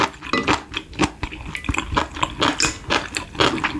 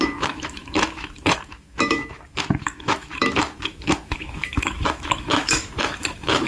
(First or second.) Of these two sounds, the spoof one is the second